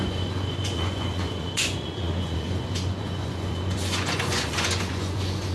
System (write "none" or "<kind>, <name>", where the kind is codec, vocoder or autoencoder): vocoder, Vocos